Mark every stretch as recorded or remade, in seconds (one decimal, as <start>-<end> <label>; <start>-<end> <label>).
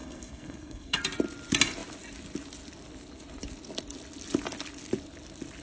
0.0-1.0 remade; 1.0-5.6 recorded